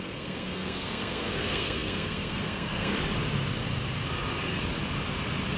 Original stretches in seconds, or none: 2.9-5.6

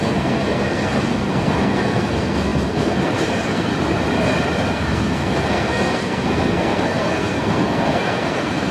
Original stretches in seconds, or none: 3.7-4.7

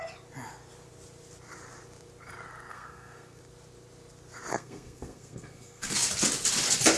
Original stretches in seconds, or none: 0.0-2.7; 3.4-4.5; 6.1-7.0